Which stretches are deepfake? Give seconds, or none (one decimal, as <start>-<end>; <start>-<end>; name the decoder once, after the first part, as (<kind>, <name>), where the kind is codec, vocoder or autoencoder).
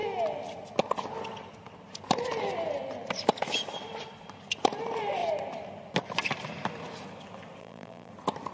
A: 7.6-8.1 (vocoder, BigVGAN v2)